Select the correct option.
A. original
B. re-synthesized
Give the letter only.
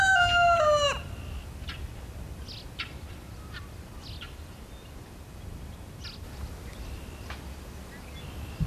A